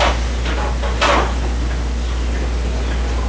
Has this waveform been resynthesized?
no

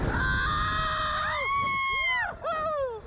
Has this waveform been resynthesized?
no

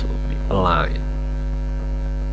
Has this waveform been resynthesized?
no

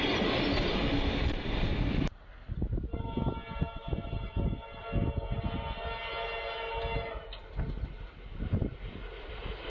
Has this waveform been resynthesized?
no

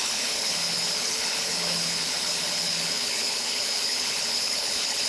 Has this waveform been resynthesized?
yes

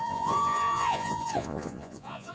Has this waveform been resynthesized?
yes